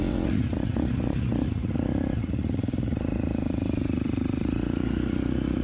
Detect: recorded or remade remade